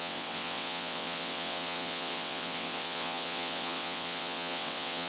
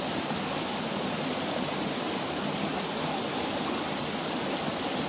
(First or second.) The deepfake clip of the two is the first